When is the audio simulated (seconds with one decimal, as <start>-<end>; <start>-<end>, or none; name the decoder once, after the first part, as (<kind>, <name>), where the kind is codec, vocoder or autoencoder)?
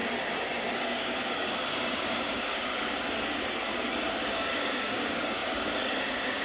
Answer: 0.7-2.7 (codec, DAC); 4.1-6.4